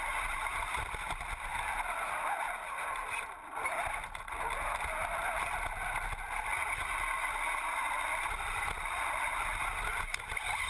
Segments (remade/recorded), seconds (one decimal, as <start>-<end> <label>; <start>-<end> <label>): 0.0-10.7 recorded